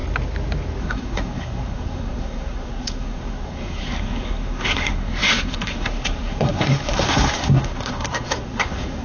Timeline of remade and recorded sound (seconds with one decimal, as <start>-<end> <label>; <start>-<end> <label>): 0.0-0.8 recorded; 0.8-9.0 remade